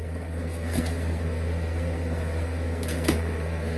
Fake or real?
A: fake